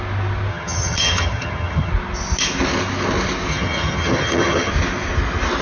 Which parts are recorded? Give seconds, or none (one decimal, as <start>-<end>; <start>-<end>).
0.0-0.5; 1.9-3.5; 4.7-5.6